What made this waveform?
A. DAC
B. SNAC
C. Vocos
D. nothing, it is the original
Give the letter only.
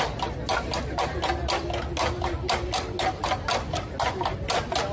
D